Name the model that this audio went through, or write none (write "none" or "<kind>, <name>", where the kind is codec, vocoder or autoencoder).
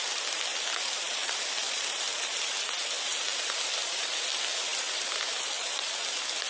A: none